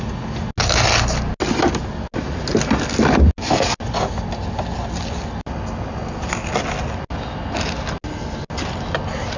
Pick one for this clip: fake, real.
real